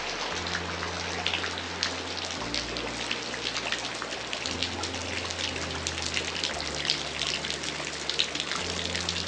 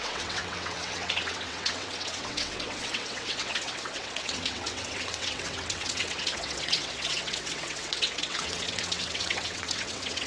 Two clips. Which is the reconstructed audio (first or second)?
second